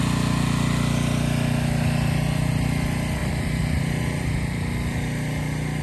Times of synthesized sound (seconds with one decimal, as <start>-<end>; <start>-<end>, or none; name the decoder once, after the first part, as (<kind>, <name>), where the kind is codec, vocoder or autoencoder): 3.2-3.8 (vocoder, BigVGAN v2)